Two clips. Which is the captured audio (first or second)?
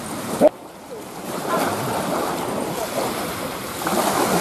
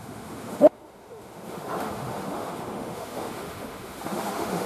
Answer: first